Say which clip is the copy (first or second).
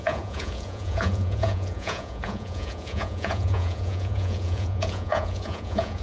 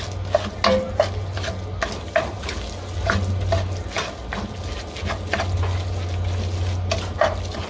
first